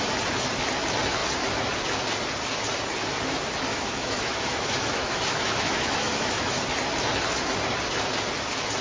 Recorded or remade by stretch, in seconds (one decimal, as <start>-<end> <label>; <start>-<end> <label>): 0.0-3.7 recorded; 3.7-6.6 remade; 6.6-8.8 recorded